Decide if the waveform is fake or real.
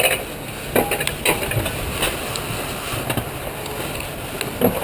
real